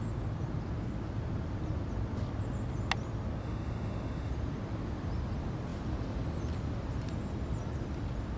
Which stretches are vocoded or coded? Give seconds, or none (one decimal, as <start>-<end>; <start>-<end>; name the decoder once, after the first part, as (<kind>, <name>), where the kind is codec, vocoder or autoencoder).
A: 3.4-4.3 (autoencoder, DAC-VAE)